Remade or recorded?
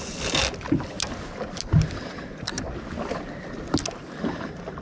recorded